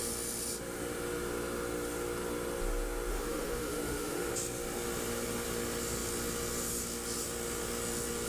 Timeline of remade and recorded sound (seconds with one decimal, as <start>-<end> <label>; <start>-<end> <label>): 0.0-3.1 recorded; 3.1-4.3 remade; 4.3-8.3 recorded